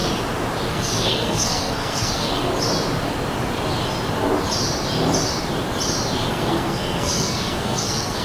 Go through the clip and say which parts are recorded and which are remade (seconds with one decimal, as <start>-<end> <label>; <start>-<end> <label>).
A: 0.0-0.7 recorded; 0.7-2.5 remade; 2.5-6.3 recorded; 6.3-8.2 remade